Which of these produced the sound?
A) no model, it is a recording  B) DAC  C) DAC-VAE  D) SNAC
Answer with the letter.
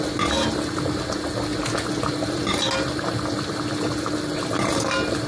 A